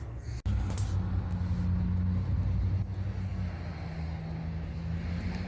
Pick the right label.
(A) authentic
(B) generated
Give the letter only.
A